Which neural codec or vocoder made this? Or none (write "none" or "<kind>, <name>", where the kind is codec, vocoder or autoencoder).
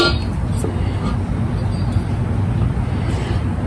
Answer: none